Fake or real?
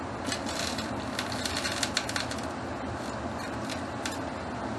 real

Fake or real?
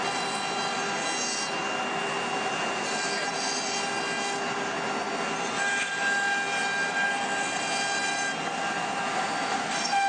real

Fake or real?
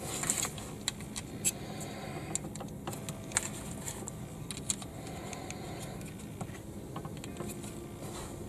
real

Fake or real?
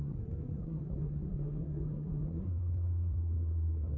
fake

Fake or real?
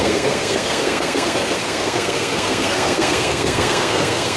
fake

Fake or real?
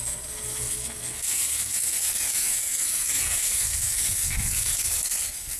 fake